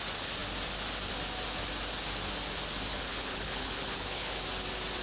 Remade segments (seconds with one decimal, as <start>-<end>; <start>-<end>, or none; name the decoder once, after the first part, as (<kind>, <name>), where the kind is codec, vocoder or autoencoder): 2.9-4.4 (codec, HILCodec)